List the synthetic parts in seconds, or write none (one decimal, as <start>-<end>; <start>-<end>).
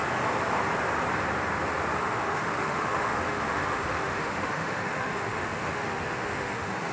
2.0-6.9